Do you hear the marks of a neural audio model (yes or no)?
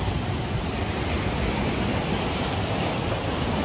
no